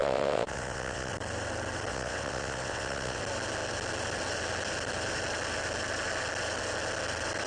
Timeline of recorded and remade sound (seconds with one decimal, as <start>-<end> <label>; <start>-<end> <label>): 0.0-1.1 remade; 1.1-1.9 recorded; 1.9-3.2 remade; 3.2-7.5 recorded